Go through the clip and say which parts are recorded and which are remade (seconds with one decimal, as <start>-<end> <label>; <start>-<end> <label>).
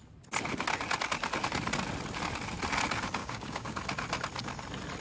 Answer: 0.0-3.2 recorded; 3.2-3.8 remade; 3.8-5.0 recorded